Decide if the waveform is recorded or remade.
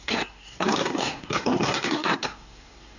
remade